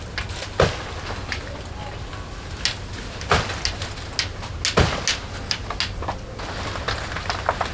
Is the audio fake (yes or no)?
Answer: no